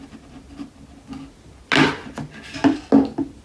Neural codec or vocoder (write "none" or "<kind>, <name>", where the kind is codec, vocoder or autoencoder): none